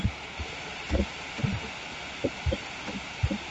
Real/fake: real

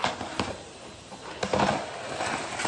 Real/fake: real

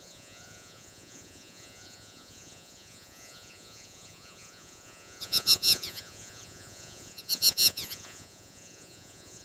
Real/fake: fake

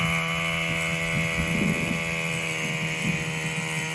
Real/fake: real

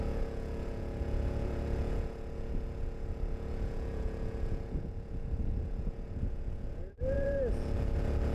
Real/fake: fake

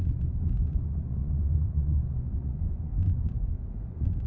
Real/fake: fake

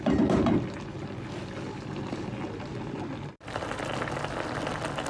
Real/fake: real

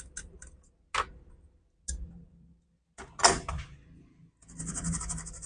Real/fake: real